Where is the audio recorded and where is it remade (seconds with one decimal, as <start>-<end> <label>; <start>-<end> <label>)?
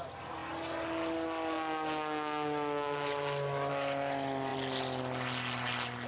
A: 0.0-6.1 recorded